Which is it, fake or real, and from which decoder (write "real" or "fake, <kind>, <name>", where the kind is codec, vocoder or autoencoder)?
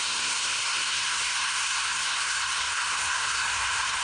fake, codec, SNAC